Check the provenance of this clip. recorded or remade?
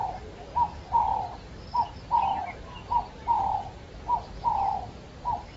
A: recorded